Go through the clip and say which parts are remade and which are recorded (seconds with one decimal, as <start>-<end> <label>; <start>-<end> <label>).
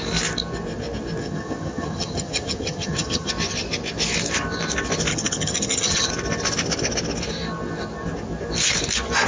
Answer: 0.0-1.2 recorded; 1.2-3.3 remade; 3.3-5.1 recorded; 5.1-6.1 remade; 6.1-9.3 recorded